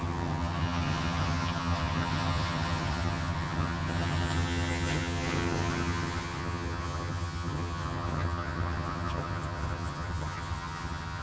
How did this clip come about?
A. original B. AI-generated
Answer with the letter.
B